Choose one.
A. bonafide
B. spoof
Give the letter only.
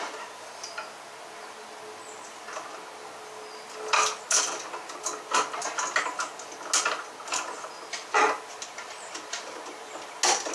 A